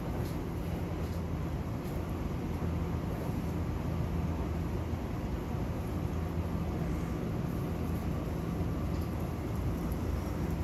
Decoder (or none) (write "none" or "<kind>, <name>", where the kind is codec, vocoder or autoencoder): none